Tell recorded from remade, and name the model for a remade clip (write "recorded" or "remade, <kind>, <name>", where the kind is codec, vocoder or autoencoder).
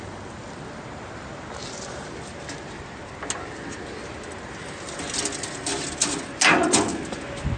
recorded